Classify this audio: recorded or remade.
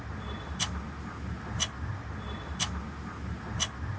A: recorded